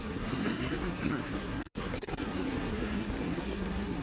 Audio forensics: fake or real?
fake